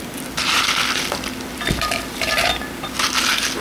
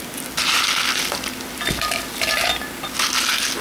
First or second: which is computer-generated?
first